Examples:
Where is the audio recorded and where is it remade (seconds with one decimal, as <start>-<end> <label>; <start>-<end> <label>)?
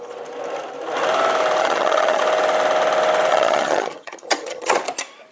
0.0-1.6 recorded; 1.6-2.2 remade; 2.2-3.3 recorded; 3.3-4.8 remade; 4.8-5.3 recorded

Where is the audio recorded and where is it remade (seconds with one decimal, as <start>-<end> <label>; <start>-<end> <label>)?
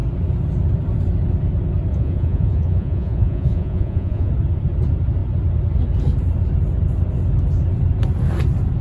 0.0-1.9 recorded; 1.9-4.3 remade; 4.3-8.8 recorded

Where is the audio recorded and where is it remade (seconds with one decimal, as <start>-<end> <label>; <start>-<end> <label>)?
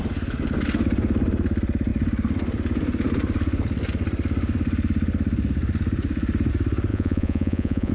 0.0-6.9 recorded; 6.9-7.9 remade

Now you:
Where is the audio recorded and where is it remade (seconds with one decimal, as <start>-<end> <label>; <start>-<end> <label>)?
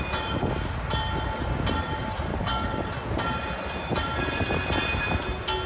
0.0-2.3 recorded; 2.3-2.9 remade; 2.9-5.7 recorded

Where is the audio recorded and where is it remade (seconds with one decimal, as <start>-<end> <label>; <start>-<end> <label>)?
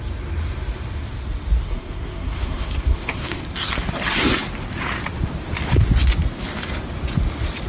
0.0-1.6 recorded; 1.6-3.4 remade; 3.4-7.7 recorded